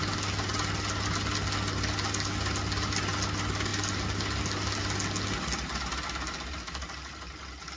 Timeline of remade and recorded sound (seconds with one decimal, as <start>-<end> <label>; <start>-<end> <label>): 0.0-7.8 recorded